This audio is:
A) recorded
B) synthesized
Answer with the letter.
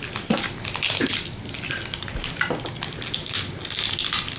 A